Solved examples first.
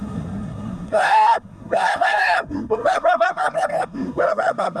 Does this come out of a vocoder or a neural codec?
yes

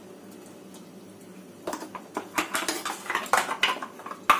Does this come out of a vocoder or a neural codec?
no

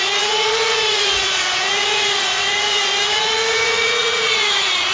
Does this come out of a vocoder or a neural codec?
yes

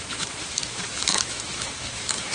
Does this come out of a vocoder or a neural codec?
yes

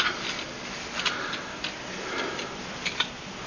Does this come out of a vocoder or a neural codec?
no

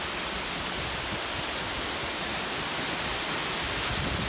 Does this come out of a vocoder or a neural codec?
no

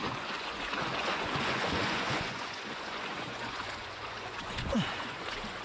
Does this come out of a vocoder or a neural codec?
yes